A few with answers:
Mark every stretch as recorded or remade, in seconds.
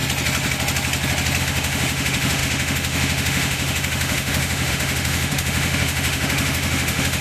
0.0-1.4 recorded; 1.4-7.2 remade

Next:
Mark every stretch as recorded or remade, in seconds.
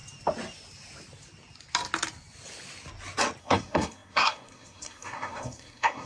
0.0-3.4 recorded; 3.4-6.1 remade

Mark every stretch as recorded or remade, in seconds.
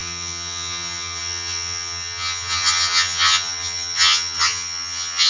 0.0-5.3 remade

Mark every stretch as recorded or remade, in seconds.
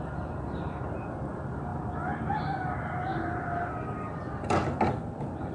0.0-5.5 recorded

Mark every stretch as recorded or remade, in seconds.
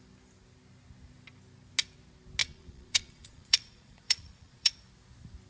0.0-2.4 recorded; 2.4-4.7 remade; 4.7-5.5 recorded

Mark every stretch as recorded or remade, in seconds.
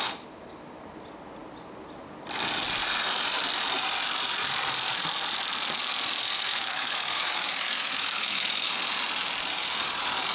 0.0-6.5 recorded; 6.5-8.7 remade; 8.7-10.3 recorded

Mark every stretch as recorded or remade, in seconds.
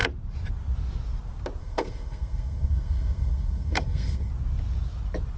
0.0-1.6 recorded; 1.6-4.3 remade; 4.3-5.4 recorded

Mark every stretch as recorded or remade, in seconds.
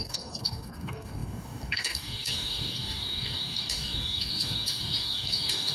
0.0-5.7 remade